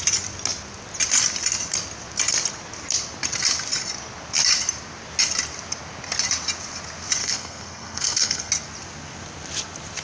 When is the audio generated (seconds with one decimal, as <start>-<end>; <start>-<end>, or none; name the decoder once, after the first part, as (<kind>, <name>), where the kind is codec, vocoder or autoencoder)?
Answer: 7.2-8.5 (codec, SNAC)